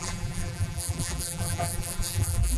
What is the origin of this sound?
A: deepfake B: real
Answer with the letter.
A